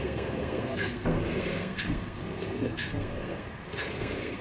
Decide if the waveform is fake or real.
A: fake